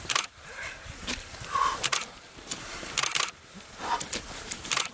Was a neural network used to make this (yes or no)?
yes